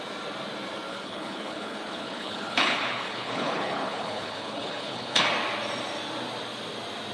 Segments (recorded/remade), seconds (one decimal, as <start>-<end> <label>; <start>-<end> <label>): 0.0-0.9 recorded; 0.9-5.2 remade; 5.2-7.1 recorded